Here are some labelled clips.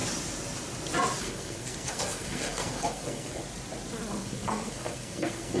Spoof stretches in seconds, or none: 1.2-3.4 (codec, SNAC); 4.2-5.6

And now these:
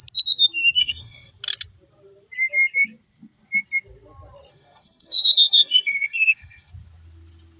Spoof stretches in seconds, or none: 0.8-1.3 (codec, SNAC); 4.5-6.7